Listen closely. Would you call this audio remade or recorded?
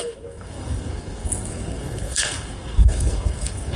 remade